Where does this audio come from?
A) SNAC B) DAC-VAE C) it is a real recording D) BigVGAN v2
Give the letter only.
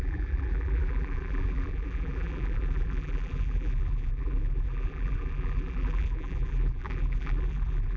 D